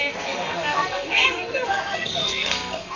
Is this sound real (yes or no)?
no